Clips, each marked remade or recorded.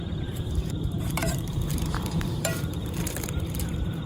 remade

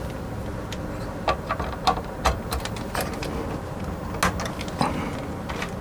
recorded